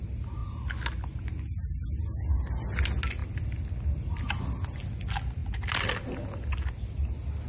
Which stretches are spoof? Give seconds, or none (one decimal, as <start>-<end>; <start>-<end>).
none